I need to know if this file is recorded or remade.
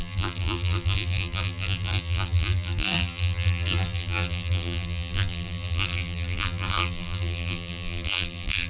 remade